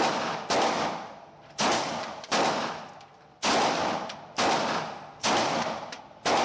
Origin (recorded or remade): recorded